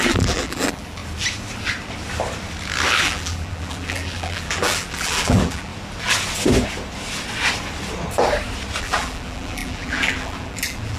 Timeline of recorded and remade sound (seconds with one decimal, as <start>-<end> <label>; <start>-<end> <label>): 0.0-1.0 remade; 1.0-3.0 recorded; 3.0-5.7 remade; 5.7-8.8 recorded; 8.8-11.0 remade